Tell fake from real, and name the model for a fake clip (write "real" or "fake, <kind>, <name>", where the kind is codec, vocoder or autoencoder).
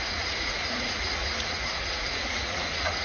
fake, vocoder, Vocos